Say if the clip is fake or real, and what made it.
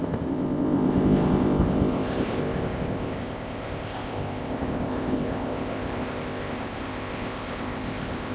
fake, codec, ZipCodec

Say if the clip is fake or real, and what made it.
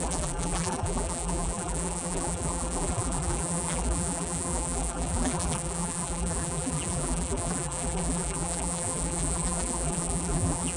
fake, vocoder, BigVGAN v2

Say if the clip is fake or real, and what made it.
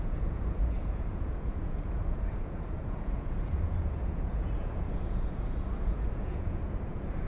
fake, vocoder, Vocos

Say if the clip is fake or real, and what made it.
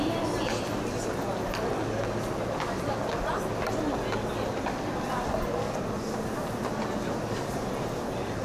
real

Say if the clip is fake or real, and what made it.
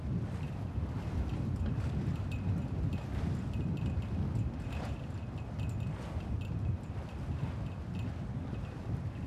real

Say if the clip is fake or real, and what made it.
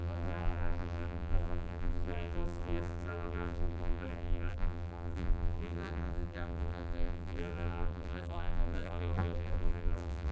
fake, vocoder, BigVGAN v2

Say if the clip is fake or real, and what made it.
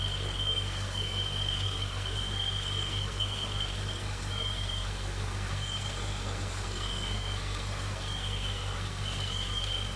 fake, codec, SNAC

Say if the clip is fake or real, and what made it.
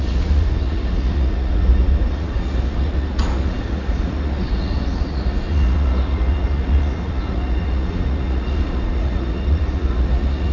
fake, vocoder, Vocos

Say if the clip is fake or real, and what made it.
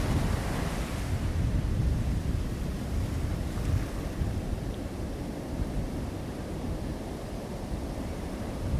fake, vocoder, BigVGAN v2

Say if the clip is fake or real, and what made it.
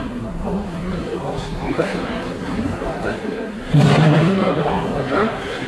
fake, codec, SNAC